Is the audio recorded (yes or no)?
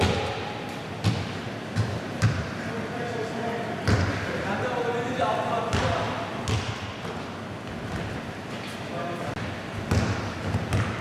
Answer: yes